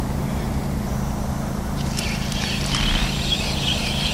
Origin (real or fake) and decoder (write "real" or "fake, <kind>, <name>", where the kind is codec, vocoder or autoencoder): fake, vocoder, BigVGAN v2